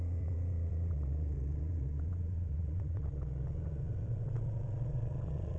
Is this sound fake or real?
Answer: fake